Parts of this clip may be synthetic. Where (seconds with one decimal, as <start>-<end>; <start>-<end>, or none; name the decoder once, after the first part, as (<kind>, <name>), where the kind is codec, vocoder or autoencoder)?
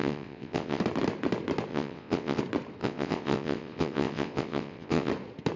0.0-0.8 (vocoder, WaveNeXt); 1.7-2.4; 2.8-5.1